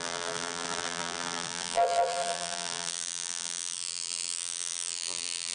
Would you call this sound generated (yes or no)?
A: yes